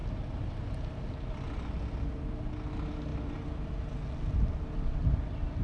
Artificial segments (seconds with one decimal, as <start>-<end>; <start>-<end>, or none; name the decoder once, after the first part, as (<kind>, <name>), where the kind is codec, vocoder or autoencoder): none